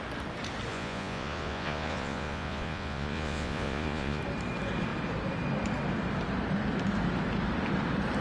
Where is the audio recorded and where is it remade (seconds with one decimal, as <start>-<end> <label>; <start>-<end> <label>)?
0.0-0.7 recorded; 0.7-4.2 remade; 4.2-8.2 recorded